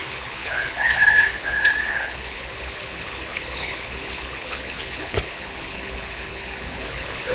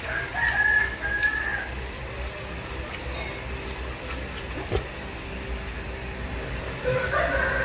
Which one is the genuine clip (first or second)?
second